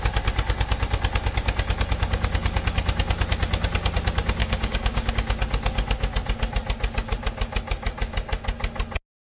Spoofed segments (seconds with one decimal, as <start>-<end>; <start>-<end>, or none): 4.4-5.1